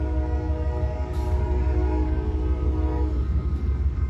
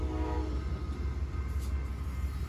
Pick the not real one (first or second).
first